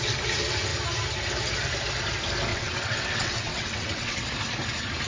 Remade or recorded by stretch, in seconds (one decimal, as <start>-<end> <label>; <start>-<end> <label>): 0.0-2.5 recorded; 2.5-4.2 remade; 4.2-5.1 recorded